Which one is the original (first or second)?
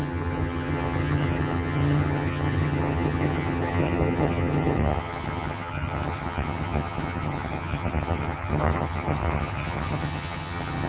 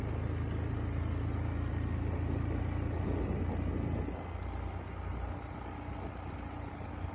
second